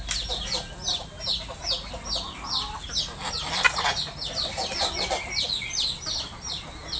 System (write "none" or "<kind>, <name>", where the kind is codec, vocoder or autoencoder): none